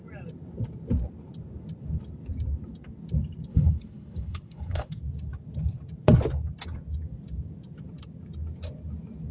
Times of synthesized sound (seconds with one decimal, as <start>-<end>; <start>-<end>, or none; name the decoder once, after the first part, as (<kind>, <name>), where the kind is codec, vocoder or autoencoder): 3.5-4.9 (codec, HILCodec)